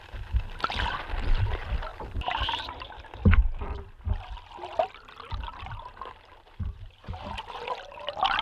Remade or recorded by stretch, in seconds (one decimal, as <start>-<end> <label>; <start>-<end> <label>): 0.0-1.9 recorded; 1.9-2.9 remade; 2.9-3.4 recorded; 3.4-7.2 remade; 7.2-8.4 recorded